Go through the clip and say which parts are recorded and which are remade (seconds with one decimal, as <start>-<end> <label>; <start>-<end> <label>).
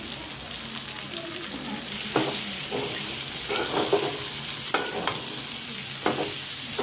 0.0-6.8 recorded